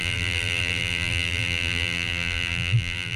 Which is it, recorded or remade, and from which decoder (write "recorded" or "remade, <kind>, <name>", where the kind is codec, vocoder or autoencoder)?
remade, vocoder, BigVGAN v2